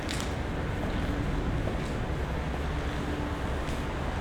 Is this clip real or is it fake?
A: real